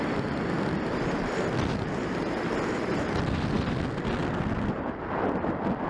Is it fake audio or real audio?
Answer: real